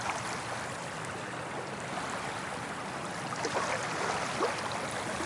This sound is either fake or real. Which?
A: real